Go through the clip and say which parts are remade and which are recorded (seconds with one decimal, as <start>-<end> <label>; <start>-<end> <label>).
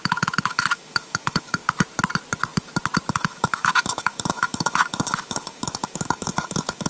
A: 0.0-1.6 remade; 1.6-3.1 recorded; 3.1-6.9 remade